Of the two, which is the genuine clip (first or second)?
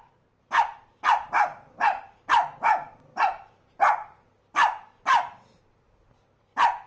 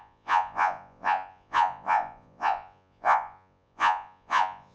first